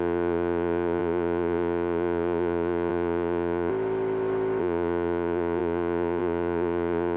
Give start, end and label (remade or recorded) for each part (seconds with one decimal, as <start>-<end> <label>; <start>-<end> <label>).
0.0-3.7 remade; 3.7-4.6 recorded; 4.6-7.2 remade